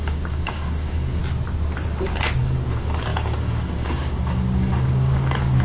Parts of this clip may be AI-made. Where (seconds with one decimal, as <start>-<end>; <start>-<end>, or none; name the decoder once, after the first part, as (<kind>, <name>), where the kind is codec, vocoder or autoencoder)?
0.0-1.2 (codec, DAC); 2.4-5.6